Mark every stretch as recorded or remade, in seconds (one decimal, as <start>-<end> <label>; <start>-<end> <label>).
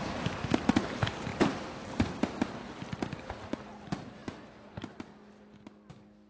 0.0-1.3 recorded; 1.3-2.8 remade; 2.8-6.3 recorded